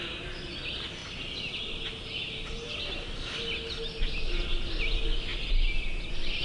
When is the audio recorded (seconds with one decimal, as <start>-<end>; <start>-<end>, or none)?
0.0-6.4